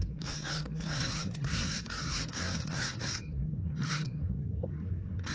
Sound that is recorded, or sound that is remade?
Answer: remade